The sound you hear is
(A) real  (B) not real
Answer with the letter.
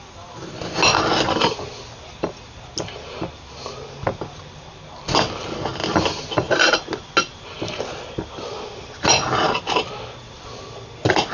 A